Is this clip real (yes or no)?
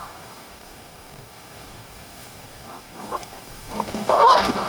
no